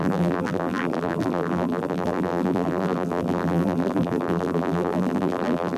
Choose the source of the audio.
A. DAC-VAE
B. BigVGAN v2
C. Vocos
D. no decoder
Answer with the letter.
B